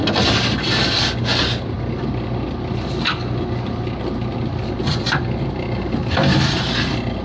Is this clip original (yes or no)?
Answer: yes